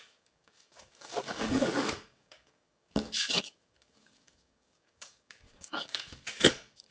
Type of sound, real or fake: fake